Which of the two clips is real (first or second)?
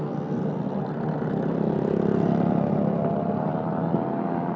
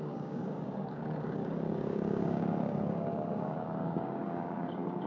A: first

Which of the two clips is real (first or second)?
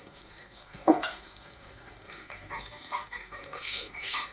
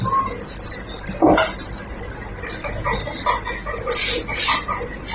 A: second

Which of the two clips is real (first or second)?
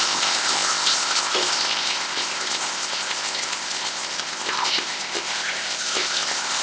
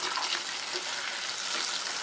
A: second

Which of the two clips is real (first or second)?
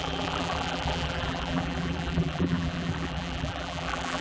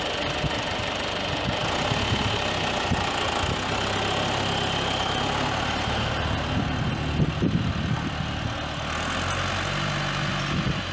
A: second